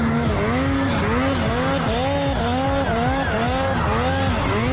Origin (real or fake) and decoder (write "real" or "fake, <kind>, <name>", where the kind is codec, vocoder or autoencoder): real